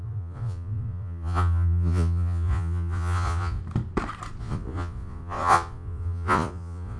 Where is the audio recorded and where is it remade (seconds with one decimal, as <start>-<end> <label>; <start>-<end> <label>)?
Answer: 0.0-3.6 remade; 3.6-4.4 recorded; 4.4-7.0 remade